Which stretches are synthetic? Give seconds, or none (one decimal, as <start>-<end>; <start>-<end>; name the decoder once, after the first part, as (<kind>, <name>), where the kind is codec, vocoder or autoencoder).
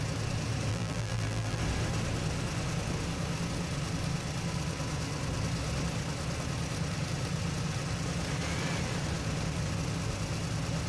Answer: 0.7-1.6 (vocoder, BigVGAN v2)